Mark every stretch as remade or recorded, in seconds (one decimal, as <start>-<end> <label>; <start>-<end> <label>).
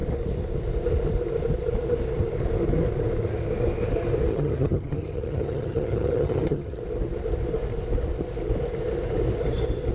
0.0-4.3 recorded; 4.3-6.8 remade; 6.8-9.9 recorded